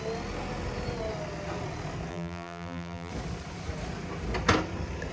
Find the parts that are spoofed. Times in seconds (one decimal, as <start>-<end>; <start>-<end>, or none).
2.1-3.1